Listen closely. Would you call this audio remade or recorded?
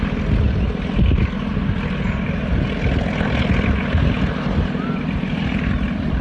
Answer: recorded